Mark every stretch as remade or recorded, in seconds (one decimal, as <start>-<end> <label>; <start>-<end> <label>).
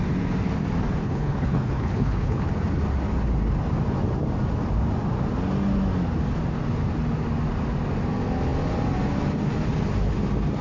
0.0-1.0 recorded; 1.0-2.5 remade; 2.5-10.6 recorded